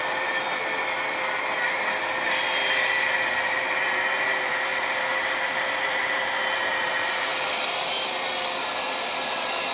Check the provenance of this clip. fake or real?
fake